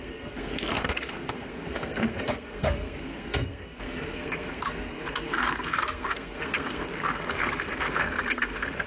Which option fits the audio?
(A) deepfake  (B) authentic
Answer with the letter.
A